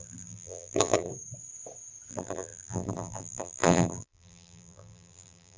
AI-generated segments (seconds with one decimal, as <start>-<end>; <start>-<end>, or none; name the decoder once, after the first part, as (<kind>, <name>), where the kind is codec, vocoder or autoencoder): 0.0-1.1 (vocoder, BigVGAN v2); 2.1-5.6